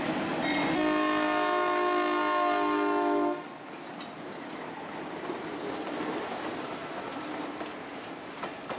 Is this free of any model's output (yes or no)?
yes